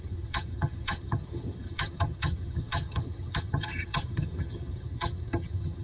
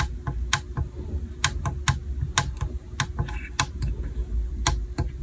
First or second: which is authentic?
second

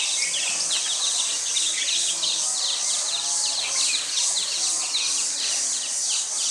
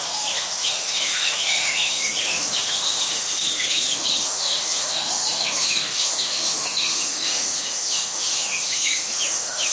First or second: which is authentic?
first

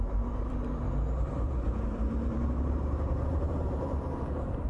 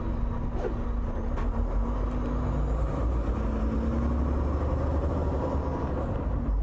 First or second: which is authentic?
second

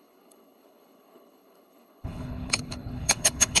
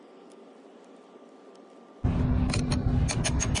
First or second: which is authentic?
second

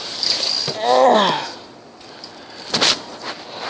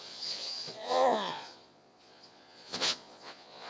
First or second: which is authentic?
first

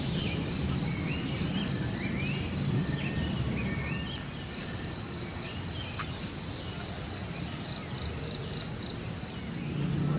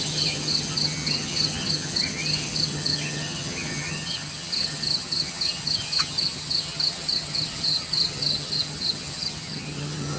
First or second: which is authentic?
first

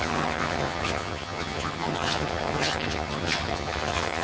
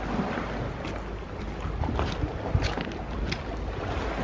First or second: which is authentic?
second